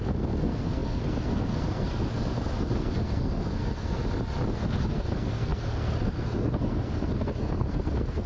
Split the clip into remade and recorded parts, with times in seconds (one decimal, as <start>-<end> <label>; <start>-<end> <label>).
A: 0.0-4.0 remade; 4.0-4.5 recorded; 4.5-8.3 remade

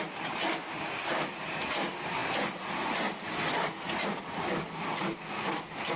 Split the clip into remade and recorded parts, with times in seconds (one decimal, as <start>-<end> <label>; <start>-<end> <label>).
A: 0.0-6.0 recorded

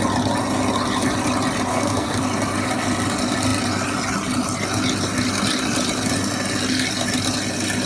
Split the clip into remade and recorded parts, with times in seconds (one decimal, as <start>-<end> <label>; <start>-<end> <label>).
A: 0.0-1.7 recorded; 1.7-2.2 remade; 2.2-7.9 recorded

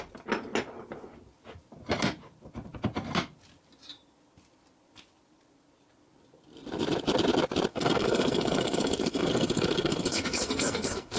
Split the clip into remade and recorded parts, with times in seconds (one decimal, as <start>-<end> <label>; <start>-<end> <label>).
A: 0.0-7.7 recorded; 7.7-11.2 remade

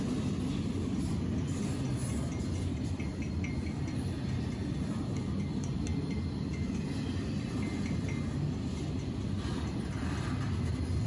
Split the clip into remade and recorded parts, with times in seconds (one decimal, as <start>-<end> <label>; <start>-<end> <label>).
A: 0.0-11.1 recorded

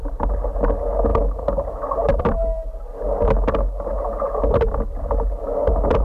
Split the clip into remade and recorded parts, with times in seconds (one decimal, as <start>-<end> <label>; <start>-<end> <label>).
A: 0.0-6.0 recorded

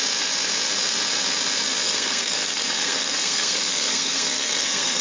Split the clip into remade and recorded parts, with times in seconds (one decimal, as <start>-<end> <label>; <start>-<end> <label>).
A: 0.0-1.8 recorded; 1.8-5.0 remade